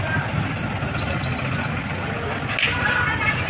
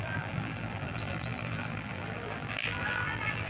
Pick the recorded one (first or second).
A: first